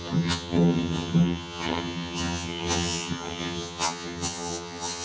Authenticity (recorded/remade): remade